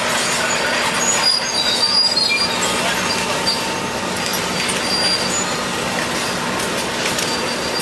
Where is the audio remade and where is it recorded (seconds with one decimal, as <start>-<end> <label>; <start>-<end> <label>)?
0.0-7.8 recorded